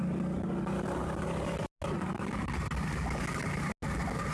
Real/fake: real